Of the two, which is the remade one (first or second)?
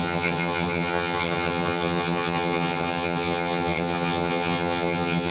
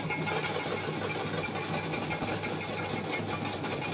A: first